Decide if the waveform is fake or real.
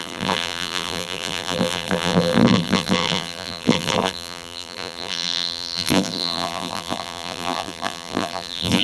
fake